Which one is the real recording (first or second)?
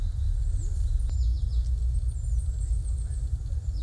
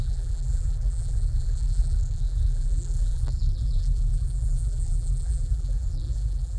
first